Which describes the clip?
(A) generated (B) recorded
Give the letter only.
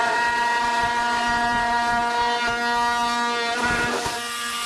B